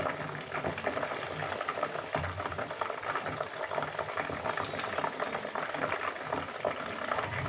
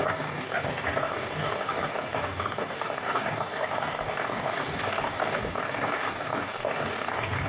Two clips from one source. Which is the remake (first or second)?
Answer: second